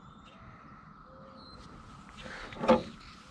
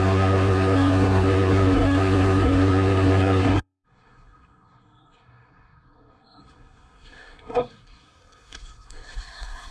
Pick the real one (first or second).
first